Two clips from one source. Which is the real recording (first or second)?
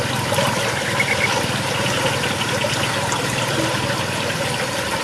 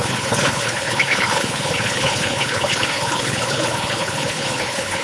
first